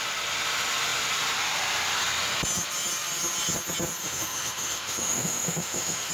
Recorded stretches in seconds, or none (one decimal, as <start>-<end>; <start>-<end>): 0.0-4.0